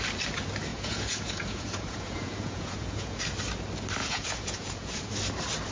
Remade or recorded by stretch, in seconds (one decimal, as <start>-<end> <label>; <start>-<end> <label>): 0.0-0.7 recorded; 0.7-3.2 remade; 3.2-4.0 recorded; 4.0-5.1 remade; 5.1-5.7 recorded